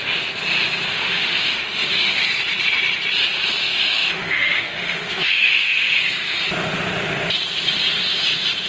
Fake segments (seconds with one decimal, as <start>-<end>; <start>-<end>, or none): 0.9-2.2; 3.6-6.0